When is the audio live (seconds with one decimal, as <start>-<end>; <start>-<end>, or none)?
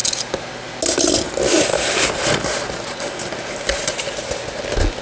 0.0-5.0